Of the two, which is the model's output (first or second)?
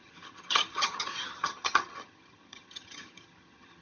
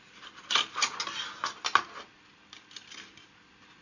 first